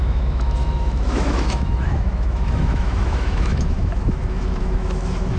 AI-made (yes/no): yes